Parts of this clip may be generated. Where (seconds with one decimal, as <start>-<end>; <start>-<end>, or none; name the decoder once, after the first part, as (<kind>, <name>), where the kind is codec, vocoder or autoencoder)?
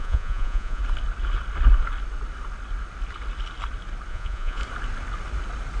0.0-0.8 (vocoder, Vocos); 4.1-4.6